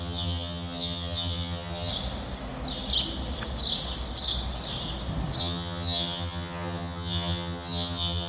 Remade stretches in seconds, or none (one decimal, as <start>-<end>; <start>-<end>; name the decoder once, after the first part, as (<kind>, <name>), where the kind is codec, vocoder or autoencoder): 0.0-1.9 (vocoder, HiFi-GAN); 5.4-8.3

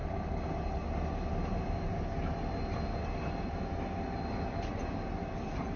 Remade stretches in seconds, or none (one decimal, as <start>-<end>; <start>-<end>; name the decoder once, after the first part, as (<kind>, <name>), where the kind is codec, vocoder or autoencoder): none

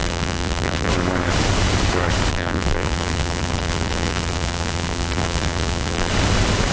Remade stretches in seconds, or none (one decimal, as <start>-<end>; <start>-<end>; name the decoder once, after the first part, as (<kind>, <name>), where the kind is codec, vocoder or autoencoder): 0.0-0.9 (vocoder, BigVGAN v2); 2.3-6.1

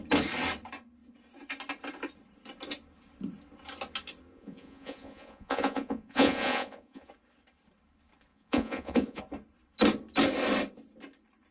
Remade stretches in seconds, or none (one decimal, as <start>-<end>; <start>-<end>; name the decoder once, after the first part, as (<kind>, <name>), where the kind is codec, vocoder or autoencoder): 4.3-7.1 (vocoder, Vocos); 8.3-9.2